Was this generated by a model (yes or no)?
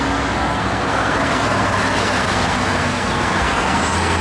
yes